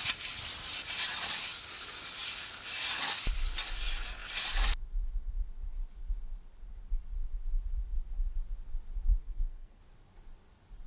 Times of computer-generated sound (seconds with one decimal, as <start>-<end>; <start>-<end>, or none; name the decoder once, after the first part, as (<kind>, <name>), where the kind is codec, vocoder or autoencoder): 9.2-9.8 (codec, SNAC)